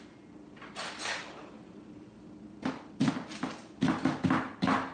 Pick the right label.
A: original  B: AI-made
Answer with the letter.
A